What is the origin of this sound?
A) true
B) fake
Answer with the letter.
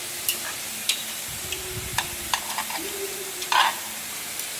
B